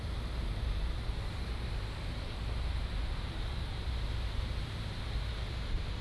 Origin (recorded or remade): remade